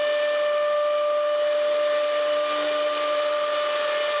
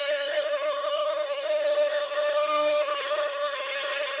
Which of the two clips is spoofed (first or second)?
second